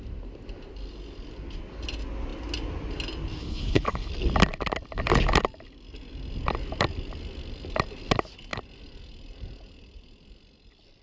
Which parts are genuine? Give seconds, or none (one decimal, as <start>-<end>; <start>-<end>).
0.0-3.4; 4.1-11.0